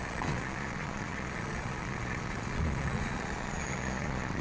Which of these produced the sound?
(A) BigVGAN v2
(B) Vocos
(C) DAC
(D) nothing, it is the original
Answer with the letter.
B